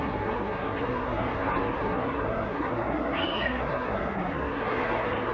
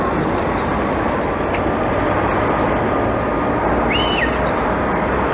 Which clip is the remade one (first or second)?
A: first